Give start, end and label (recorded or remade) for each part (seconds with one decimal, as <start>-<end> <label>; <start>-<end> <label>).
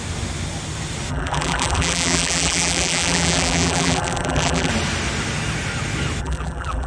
0.0-1.1 recorded; 1.1-4.7 remade; 4.7-6.2 recorded; 6.2-6.9 remade